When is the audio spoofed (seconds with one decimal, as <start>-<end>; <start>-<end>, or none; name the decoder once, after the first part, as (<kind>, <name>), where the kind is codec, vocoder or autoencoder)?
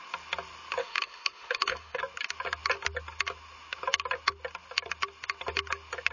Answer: 0.8-2.0 (autoencoder, DAC-VAE)